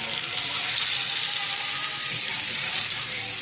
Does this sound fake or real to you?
fake